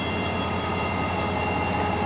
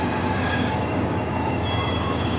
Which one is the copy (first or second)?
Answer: second